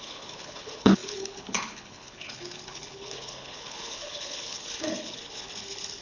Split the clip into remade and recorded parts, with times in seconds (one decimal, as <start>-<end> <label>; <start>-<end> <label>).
0.0-6.0 remade